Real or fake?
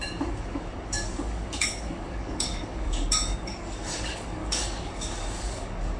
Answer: fake